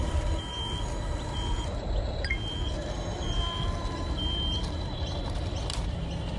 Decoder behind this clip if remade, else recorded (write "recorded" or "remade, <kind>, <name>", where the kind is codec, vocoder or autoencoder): recorded